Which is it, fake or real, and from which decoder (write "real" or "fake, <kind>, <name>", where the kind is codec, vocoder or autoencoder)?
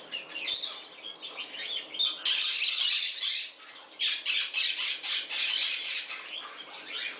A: real